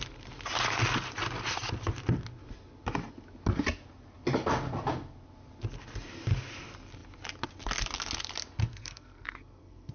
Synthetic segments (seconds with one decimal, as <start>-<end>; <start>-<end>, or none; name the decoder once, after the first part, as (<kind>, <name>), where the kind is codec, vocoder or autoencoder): 8.6-9.9 (codec, SNAC)

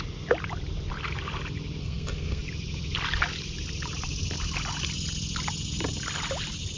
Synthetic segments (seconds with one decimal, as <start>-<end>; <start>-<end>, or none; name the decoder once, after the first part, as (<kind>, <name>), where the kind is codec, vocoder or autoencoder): 1.8-2.4 (codec, SNAC)

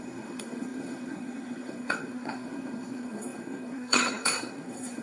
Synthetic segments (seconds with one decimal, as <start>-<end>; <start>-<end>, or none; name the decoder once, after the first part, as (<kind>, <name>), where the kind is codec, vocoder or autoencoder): 0.0-5.0 (codec, SNAC)

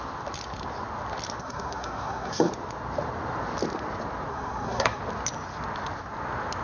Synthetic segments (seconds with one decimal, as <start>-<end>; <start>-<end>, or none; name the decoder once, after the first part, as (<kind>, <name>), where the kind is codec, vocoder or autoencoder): 1.4-2.5 (codec, SNAC); 4.3-5.0

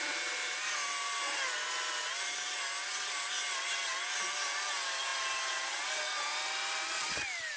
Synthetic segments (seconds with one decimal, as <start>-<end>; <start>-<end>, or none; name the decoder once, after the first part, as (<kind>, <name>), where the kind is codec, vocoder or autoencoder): none

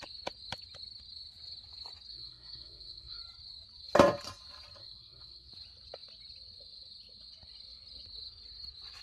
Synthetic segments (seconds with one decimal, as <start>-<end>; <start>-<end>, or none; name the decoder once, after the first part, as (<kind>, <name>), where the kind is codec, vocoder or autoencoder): 2.1-3.2 (codec, SNAC); 4.8-5.5

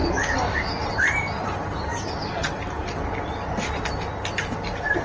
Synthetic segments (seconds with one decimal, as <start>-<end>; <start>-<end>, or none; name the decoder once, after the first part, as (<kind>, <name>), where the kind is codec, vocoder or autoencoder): none

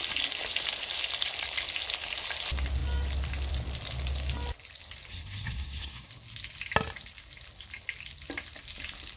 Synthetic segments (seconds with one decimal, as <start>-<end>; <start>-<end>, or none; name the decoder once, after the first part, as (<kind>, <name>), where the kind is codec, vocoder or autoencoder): 5.1-6.1 (codec, SNAC)